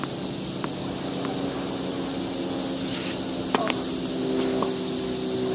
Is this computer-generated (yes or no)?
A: no